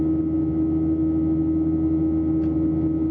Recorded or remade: recorded